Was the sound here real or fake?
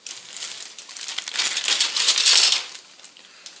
real